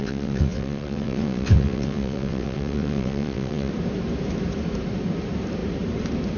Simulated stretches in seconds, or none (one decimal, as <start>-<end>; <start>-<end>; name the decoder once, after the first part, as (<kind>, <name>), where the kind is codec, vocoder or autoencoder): 0.0-3.7 (vocoder, WaveNeXt)